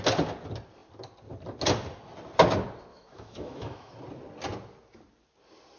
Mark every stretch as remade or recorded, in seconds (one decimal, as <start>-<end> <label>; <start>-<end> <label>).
0.0-2.9 recorded; 2.9-3.9 remade; 3.9-5.8 recorded